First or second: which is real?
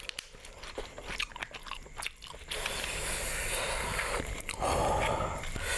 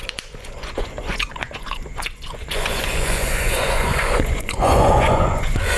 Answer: first